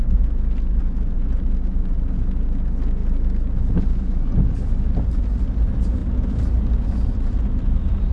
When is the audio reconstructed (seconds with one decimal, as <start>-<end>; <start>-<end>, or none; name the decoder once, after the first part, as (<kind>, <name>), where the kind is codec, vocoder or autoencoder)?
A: none